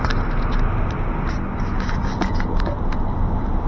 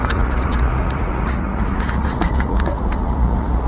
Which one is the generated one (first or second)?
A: second